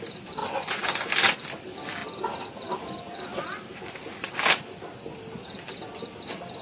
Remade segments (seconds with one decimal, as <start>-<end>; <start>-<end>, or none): 0.4-1.1